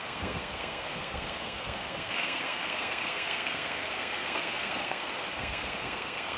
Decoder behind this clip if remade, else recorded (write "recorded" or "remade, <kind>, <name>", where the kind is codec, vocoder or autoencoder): remade, codec, SNAC